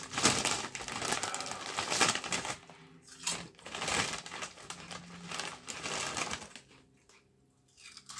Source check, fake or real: real